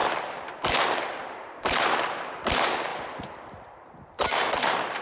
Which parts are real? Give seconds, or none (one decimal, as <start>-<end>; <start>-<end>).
2.4-2.9